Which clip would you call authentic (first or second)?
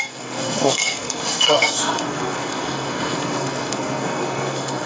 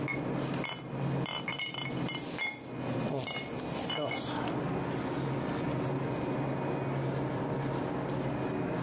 second